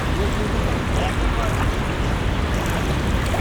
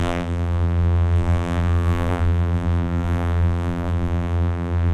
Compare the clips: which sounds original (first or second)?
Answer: first